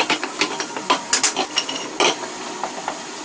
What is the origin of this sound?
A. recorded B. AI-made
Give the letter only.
A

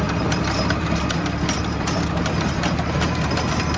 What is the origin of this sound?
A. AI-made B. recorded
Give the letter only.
A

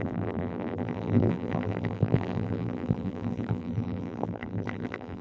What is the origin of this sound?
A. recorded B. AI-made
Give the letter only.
B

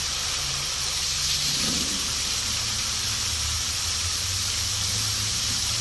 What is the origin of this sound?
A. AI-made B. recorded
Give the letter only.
A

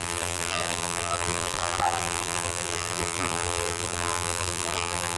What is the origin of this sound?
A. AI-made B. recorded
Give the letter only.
A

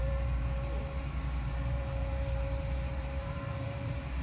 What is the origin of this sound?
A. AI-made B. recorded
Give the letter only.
A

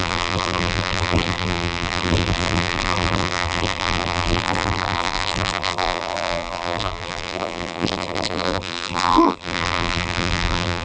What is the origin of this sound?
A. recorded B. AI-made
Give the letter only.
B